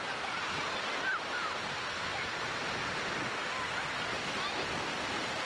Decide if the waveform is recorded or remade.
recorded